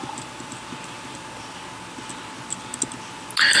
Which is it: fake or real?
real